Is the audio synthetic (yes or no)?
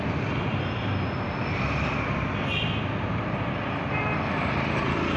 yes